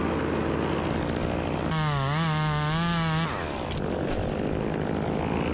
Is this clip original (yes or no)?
yes